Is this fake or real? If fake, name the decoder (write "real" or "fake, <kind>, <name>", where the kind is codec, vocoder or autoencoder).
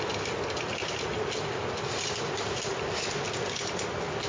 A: real